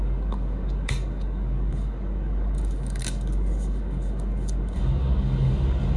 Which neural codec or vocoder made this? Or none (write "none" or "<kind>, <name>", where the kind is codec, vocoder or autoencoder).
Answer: codec, DAC